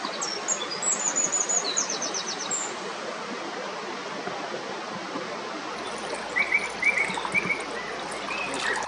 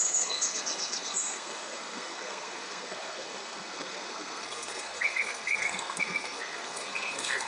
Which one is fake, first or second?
second